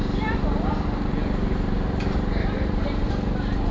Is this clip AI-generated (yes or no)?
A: yes